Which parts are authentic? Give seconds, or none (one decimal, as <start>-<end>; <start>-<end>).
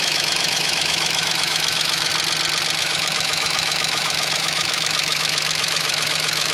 2.1-2.8